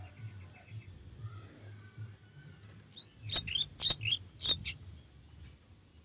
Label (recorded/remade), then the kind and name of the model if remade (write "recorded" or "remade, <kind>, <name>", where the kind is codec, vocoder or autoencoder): recorded